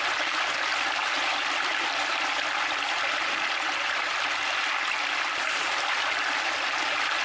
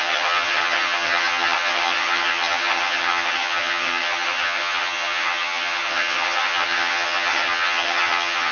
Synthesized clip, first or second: second